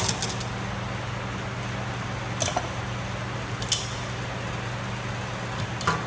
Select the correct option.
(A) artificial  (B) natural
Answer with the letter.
B